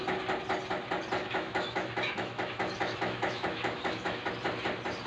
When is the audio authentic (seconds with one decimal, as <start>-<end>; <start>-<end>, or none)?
0.0-1.2; 4.3-5.1